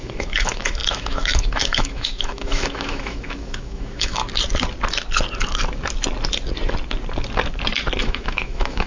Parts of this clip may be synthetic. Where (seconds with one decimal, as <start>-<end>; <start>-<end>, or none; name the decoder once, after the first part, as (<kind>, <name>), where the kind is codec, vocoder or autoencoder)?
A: 0.0-4.2 (autoencoder, DAC-VAE); 8.0-8.9